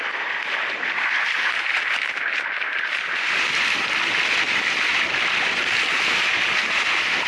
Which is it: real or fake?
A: real